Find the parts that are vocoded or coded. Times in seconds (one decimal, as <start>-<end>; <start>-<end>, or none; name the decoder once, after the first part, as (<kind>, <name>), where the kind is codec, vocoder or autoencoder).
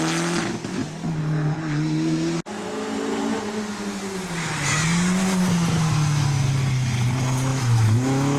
7.5-8.4 (autoencoder, DAC-VAE)